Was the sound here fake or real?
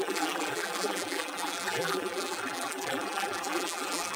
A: fake